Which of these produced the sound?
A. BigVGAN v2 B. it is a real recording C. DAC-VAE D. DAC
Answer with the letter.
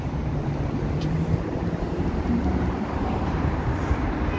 A